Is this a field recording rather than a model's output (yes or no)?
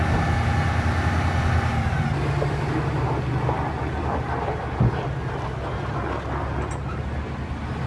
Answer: yes